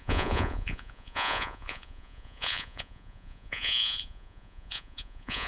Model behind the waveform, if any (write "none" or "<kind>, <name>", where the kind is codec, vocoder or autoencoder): vocoder, Vocos